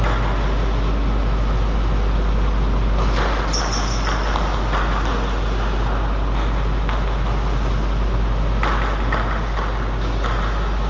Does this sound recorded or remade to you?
recorded